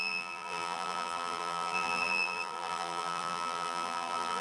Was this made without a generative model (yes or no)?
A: no